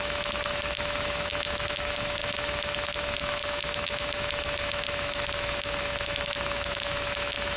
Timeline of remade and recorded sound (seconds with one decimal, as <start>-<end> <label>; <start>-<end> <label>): 0.0-7.6 remade